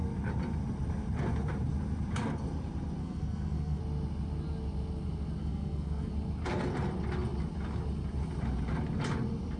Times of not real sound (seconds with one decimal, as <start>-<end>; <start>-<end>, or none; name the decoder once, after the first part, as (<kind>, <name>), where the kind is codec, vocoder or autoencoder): 3.0-3.8 (codec, SNAC); 5.4-6.1